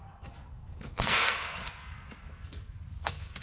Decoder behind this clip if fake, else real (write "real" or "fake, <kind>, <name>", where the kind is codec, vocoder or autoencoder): fake, codec, SNAC